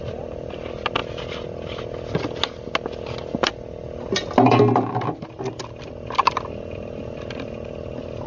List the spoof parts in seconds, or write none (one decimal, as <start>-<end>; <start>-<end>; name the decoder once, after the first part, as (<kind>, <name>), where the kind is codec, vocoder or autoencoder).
none